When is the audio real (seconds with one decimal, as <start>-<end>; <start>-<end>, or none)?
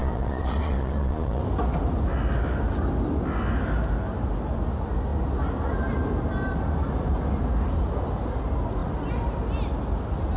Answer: 1.4-10.4